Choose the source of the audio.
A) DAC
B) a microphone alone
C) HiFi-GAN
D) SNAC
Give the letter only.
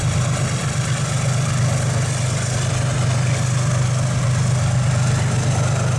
B